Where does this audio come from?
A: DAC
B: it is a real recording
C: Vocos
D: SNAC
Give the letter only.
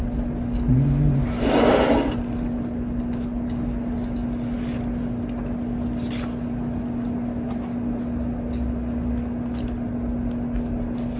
B